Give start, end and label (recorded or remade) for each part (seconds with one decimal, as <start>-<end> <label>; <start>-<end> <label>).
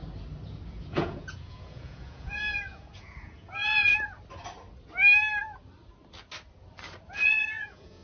0.0-0.9 recorded; 0.9-3.9 remade; 3.9-7.1 recorded; 7.1-8.0 remade